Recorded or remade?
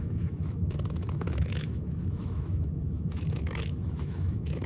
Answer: remade